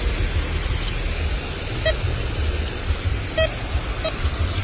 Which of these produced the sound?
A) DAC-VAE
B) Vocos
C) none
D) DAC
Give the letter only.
C